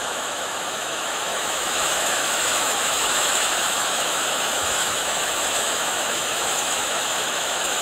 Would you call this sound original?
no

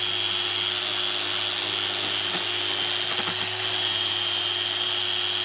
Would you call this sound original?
yes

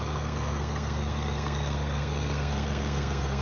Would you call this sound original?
no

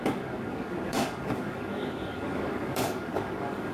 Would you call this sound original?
no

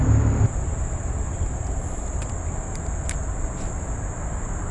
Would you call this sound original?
yes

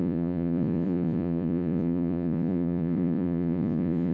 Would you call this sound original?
no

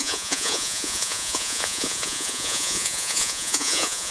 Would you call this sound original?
no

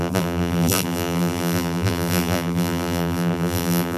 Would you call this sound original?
no